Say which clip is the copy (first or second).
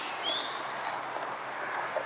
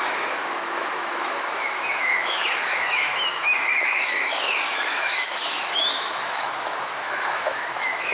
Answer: second